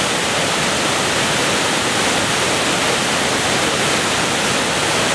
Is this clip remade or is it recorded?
recorded